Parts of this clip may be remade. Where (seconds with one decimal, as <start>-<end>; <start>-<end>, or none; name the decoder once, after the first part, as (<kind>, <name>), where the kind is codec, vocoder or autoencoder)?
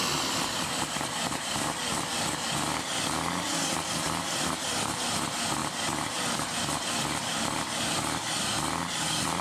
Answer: 0.0-9.4 (vocoder, BigVGAN v2)